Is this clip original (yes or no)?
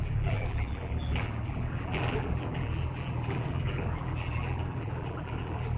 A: no